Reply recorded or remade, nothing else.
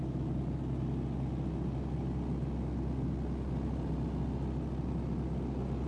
recorded